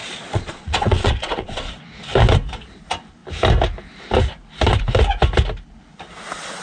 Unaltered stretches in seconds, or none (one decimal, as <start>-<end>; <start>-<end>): 1.7-6.6